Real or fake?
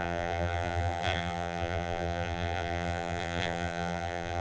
fake